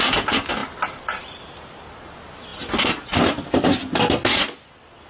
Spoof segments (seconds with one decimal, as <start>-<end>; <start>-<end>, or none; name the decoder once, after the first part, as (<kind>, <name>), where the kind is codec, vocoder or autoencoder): none

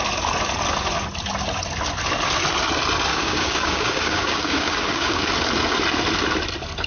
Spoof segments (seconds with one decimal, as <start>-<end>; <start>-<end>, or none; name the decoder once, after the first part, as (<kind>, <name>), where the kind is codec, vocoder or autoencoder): 3.1-5.3 (codec, DAC)

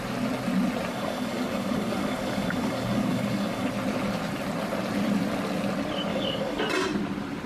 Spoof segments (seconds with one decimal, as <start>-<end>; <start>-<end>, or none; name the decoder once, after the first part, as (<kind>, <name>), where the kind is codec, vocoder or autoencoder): 0.9-3.7 (codec, DAC); 6.1-6.6

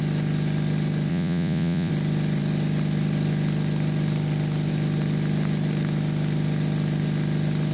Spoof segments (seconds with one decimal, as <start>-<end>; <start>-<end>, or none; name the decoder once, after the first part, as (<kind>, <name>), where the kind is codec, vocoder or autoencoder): 1.1-1.9 (vocoder, Vocos)

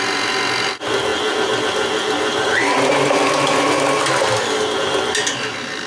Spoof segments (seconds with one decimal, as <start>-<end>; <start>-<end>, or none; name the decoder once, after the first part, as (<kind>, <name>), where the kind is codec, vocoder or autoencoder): none